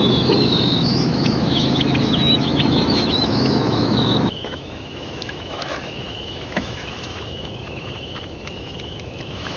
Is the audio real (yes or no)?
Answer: no